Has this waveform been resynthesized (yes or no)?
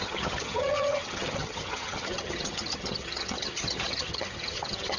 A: yes